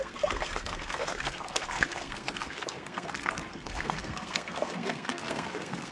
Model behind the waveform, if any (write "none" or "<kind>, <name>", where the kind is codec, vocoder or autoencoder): codec, SNAC